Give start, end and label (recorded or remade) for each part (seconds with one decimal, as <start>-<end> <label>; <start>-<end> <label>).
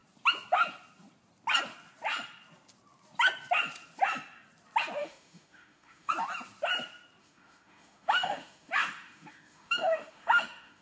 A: 0.0-5.0 recorded; 5.0-6.1 remade; 6.1-7.2 recorded; 7.2-10.8 remade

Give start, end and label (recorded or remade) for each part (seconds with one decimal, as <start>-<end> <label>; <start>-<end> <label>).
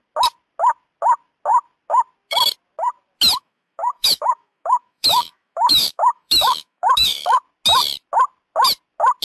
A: 0.0-3.4 recorded; 3.4-7.4 remade; 7.4-9.2 recorded